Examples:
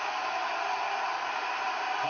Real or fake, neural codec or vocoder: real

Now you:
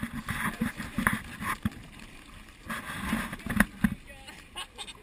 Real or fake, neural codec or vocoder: real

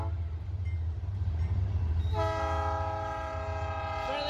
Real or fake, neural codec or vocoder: real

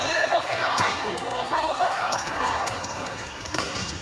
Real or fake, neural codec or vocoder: fake, codec, SNAC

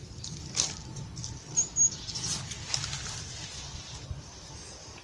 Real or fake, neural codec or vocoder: real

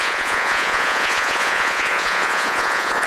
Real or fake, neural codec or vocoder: fake, vocoder, Vocos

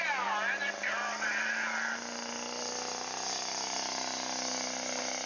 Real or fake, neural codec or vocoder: real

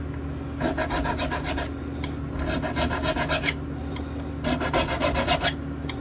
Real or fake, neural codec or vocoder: real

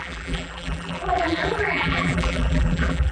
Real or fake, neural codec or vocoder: fake, vocoder, BigVGAN v2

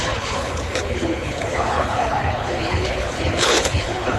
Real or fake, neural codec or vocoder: fake, codec, HILCodec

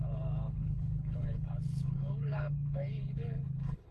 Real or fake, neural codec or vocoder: fake, codec, HILCodec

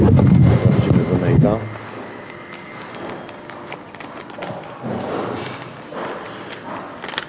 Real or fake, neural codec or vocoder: real